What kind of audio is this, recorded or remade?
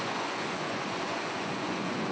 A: remade